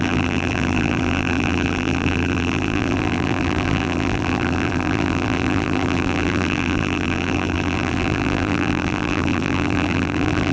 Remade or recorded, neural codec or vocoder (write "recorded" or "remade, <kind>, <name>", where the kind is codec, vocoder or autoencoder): remade, vocoder, BigVGAN v2